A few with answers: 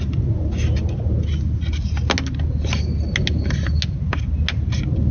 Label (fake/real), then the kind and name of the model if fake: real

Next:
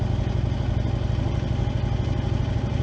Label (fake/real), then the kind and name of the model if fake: real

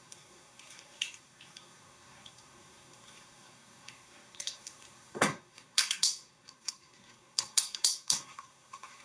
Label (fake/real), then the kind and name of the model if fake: fake, codec, SNAC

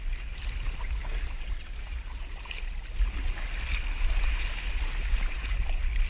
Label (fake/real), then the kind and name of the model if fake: real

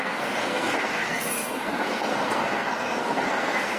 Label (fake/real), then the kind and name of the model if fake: fake, codec, SNAC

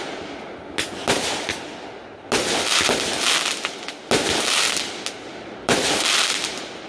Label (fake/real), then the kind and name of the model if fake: real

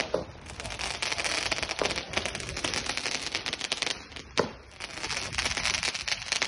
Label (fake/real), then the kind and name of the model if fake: real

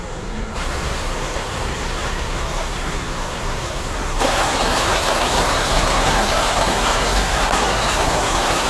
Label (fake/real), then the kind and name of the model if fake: fake, codec, SNAC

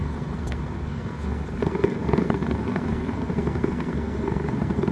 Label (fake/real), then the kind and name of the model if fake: fake, codec, SNAC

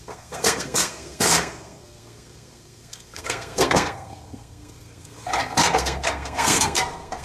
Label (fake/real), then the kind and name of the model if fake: fake, codec, SNAC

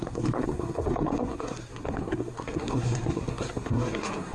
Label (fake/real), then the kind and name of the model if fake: fake, codec, SNAC